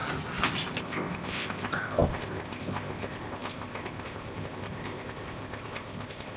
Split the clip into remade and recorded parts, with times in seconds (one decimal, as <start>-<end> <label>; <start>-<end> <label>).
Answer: 0.0-0.8 recorded; 0.8-6.4 remade